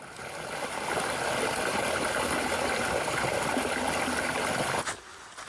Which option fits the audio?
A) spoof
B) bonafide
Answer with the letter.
B